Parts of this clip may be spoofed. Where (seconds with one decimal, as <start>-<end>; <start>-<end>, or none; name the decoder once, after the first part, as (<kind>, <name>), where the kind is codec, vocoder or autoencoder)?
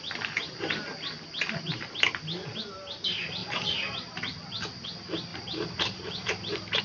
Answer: 3.4-4.4 (vocoder, BigVGAN v2); 5.3-6.8